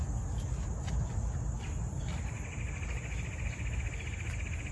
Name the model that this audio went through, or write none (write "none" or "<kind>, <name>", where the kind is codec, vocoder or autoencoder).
none